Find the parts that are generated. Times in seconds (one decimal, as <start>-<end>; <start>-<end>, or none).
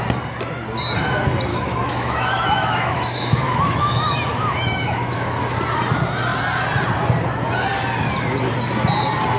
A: 1.5-5.4